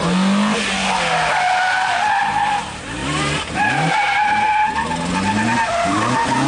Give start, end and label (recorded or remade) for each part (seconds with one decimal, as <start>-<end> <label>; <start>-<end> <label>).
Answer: 0.0-3.0 recorded; 3.0-3.7 remade; 3.7-6.5 recorded